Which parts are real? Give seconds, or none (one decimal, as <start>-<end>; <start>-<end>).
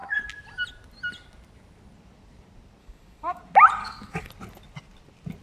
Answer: 0.0-2.8; 3.4-3.8; 4.3-5.4